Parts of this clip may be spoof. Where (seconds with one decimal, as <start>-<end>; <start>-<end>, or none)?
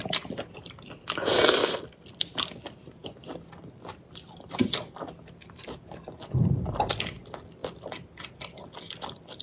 none